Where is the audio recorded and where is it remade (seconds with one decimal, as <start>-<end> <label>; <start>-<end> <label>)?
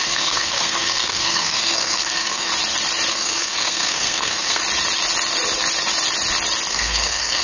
0.0-2.5 remade; 2.5-3.1 recorded; 3.1-4.6 remade; 4.6-6.7 recorded; 6.7-7.4 remade